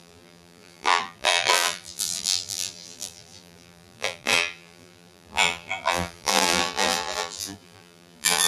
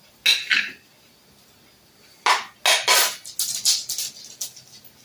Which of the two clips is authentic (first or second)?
second